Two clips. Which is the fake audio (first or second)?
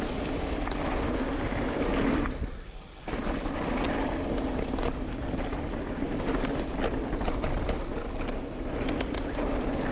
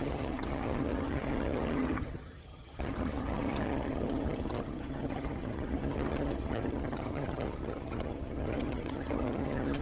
second